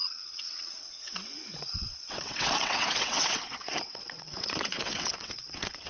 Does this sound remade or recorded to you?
remade